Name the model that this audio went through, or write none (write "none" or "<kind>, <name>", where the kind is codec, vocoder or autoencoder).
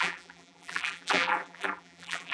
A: vocoder, BigVGAN v2